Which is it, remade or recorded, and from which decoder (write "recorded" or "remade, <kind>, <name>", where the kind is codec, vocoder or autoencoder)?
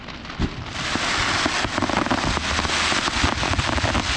recorded